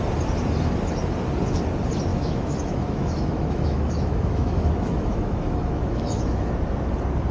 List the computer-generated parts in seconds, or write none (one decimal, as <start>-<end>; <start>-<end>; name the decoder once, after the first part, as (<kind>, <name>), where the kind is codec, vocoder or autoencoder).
2.1-6.5 (autoencoder, DAC-VAE)